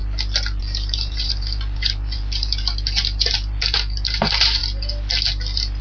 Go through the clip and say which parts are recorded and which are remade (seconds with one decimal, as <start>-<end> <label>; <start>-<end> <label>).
0.0-0.6 recorded; 0.6-4.6 remade; 4.6-5.8 recorded

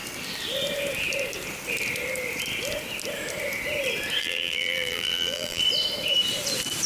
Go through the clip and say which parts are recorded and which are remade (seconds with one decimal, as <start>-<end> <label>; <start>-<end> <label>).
0.0-4.2 recorded; 4.2-5.6 remade; 5.6-6.9 recorded

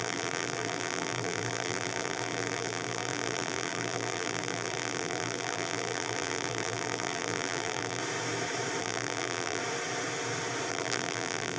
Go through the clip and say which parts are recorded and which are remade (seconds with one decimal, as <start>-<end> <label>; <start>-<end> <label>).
0.0-8.0 remade; 8.0-8.8 recorded; 8.8-9.6 remade; 9.6-10.7 recorded; 10.7-11.6 remade

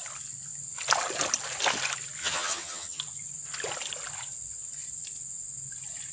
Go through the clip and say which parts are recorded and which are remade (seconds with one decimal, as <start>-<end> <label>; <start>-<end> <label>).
0.0-2.2 recorded; 2.2-3.0 remade; 3.0-6.1 recorded

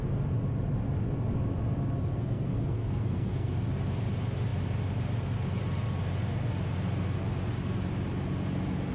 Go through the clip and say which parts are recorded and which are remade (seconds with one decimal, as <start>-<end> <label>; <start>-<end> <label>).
0.0-2.1 recorded; 2.1-3.5 remade; 3.5-8.9 recorded

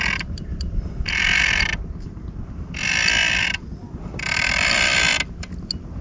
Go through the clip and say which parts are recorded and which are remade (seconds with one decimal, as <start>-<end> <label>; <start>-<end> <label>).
0.0-5.1 remade; 5.1-6.0 recorded

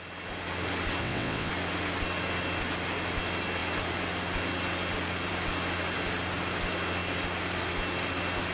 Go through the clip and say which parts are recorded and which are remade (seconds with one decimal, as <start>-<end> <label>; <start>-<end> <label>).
0.0-1.0 recorded; 1.0-1.5 remade; 1.5-8.5 recorded

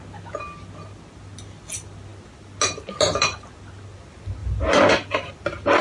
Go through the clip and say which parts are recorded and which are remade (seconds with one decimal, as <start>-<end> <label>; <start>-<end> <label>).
0.0-5.8 recorded